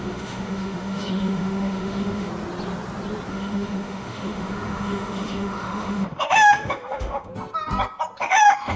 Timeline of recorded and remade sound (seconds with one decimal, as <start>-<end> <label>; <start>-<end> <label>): 0.0-2.3 remade; 2.3-3.3 recorded; 3.3-7.3 remade; 7.3-8.2 recorded; 8.2-8.8 remade